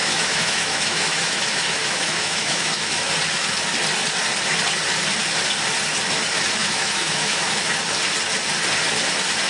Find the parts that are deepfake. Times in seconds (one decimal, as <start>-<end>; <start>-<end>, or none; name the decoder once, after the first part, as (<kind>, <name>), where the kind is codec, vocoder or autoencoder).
0.0-3.1 (autoencoder, DAC-VAE); 6.6-7.8